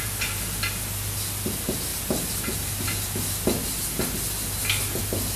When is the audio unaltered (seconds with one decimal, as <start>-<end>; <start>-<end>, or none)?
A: 0.0-5.4